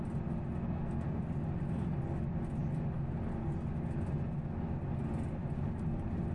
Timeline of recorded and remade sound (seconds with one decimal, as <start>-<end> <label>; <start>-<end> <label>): 0.0-0.7 recorded; 0.7-1.2 remade; 1.2-6.3 recorded